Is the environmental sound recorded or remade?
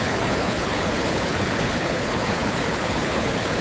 remade